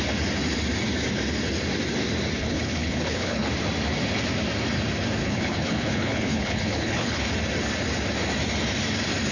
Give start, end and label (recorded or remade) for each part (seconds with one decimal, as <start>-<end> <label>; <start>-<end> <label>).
0.0-2.4 recorded; 2.4-3.5 remade; 3.5-5.2 recorded; 5.2-7.3 remade; 7.3-9.3 recorded